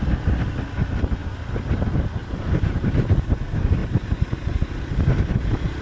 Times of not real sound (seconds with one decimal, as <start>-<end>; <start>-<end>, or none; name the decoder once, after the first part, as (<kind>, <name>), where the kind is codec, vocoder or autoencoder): 1.2-1.8 (vocoder, BigVGAN v2); 2.2-3.3; 3.8-5.8